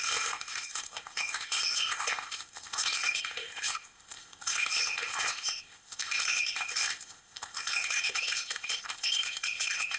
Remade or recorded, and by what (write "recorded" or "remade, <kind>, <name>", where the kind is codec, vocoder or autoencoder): remade, codec, ZipCodec